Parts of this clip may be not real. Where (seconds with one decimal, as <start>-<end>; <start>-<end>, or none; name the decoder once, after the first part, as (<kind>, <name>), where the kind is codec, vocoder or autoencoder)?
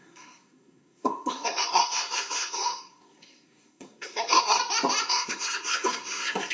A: 0.0-4.6 (codec, SNAC); 5.1-6.5